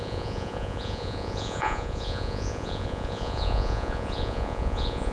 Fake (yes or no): yes